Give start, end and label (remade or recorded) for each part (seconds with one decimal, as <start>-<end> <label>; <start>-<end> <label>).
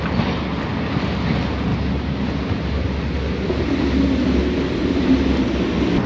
0.0-6.1 recorded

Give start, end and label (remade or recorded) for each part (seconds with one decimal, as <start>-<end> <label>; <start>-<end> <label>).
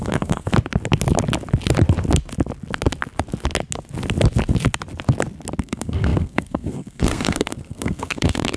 0.0-0.5 remade; 0.5-5.6 recorded; 5.6-8.6 remade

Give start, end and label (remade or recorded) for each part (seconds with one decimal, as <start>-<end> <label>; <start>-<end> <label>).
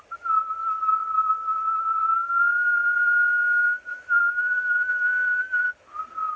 0.0-6.4 recorded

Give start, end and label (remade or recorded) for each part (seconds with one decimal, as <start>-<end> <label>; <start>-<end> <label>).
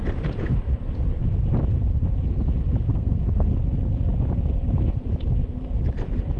0.0-2.9 recorded; 2.9-3.5 remade; 3.5-6.4 recorded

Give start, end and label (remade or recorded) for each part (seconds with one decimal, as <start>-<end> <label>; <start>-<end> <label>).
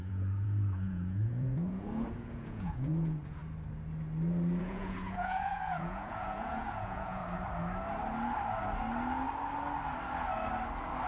0.0-3.4 remade; 3.4-4.6 recorded; 4.6-7.2 remade; 7.2-11.1 recorded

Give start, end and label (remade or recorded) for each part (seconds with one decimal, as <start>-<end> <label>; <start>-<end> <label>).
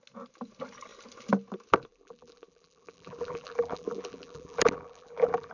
0.0-1.9 recorded; 1.9-5.5 remade